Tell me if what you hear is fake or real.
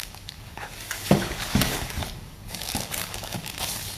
fake